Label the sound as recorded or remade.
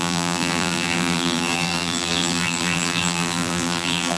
remade